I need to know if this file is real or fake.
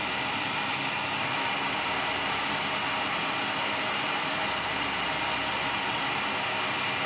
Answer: real